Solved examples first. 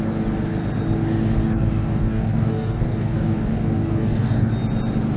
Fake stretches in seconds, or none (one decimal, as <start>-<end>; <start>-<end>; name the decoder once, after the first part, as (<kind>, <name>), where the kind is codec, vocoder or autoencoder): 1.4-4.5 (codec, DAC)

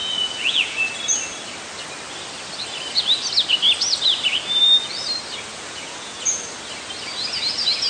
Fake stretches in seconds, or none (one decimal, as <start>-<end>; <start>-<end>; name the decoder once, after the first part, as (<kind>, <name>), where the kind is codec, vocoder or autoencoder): 0.0-0.9 (vocoder, Vocos); 5.5-6.4

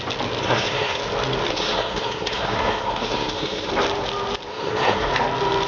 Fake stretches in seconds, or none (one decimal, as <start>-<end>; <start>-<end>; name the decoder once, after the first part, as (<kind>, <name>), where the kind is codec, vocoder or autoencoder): 0.4-1.0 (codec, SNAC); 1.5-3.7; 4.5-5.1